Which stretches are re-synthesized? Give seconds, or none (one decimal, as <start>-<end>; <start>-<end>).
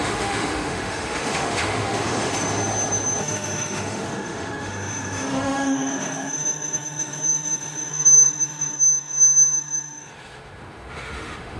0.0-2.3; 3.2-11.6